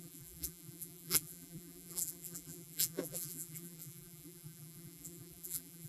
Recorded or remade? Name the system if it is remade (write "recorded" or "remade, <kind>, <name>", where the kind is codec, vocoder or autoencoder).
remade, vocoder, BigVGAN v2